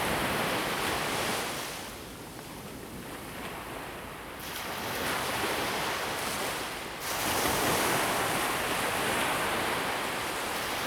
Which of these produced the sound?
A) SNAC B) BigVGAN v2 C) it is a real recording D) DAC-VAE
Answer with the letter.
C